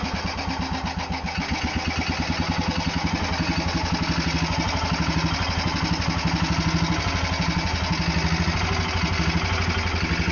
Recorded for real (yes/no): yes